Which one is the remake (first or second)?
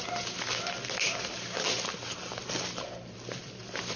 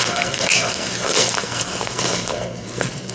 second